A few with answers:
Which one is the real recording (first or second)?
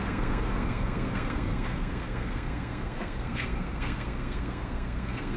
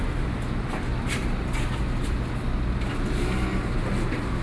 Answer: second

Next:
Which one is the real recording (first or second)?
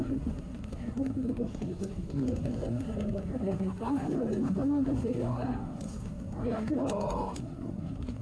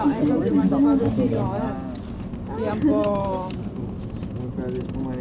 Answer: second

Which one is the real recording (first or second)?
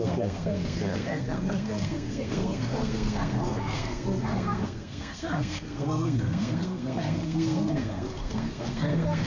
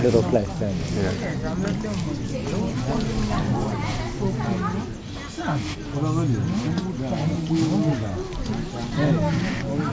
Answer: second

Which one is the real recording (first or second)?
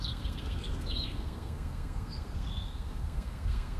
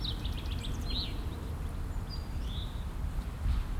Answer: second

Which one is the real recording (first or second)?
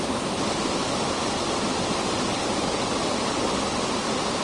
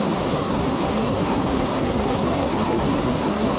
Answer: first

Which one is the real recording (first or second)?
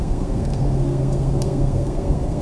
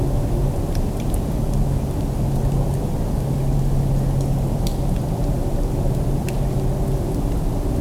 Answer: second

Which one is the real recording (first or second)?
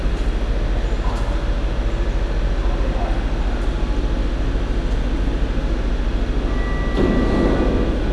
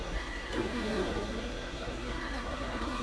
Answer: first